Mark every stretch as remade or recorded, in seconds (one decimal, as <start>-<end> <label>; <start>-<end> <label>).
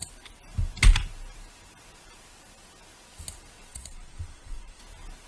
0.0-3.7 recorded; 3.7-4.8 remade; 4.8-5.3 recorded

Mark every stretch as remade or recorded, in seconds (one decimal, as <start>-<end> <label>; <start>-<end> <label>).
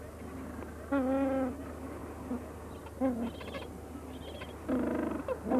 0.0-5.6 recorded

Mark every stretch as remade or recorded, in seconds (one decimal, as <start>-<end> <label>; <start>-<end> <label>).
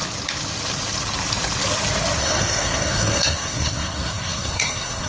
0.0-2.2 recorded; 2.2-5.1 remade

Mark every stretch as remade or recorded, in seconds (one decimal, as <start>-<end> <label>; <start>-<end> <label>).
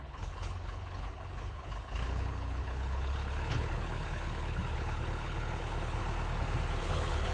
0.0-6.0 remade; 6.0-6.8 recorded; 6.8-7.3 remade